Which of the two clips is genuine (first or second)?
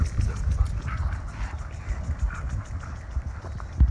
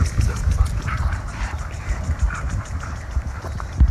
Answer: first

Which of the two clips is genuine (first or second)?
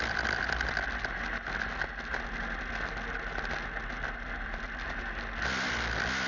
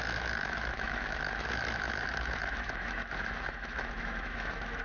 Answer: first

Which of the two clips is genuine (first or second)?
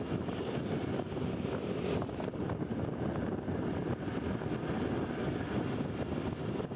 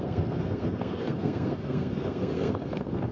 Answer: first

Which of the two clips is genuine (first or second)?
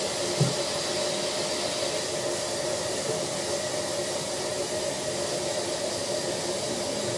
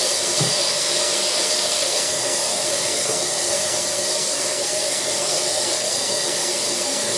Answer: first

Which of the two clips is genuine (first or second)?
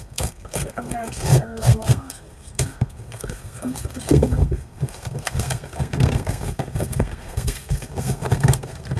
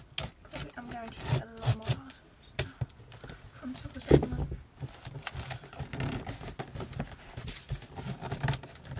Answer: second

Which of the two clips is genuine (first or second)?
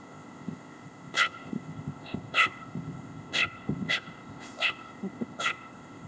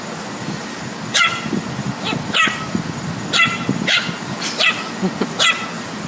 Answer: second